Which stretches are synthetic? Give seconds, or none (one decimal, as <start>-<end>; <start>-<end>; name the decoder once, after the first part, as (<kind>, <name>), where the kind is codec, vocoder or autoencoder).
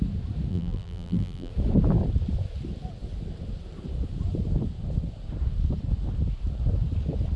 0.5-1.5 (vocoder, BigVGAN v2)